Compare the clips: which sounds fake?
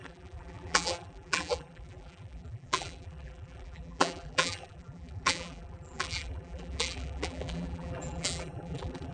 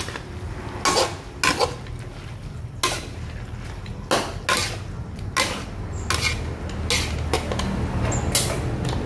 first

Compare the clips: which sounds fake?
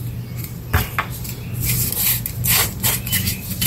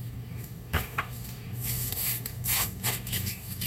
second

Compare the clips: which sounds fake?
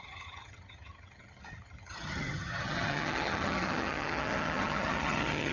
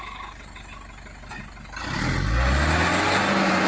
first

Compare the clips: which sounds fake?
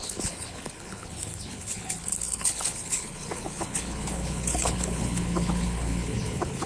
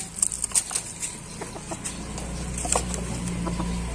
first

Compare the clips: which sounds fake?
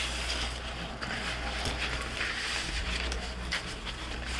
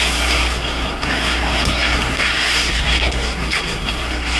second